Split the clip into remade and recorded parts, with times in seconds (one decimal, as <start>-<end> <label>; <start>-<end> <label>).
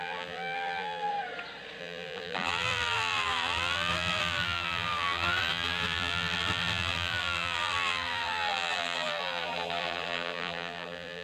0.0-1.1 remade; 1.1-1.8 recorded; 1.8-11.2 remade